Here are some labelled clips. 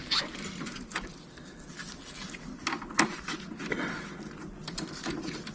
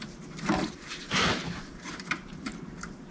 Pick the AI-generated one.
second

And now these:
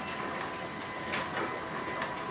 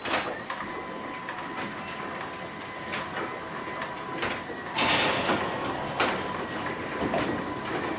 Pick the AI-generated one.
second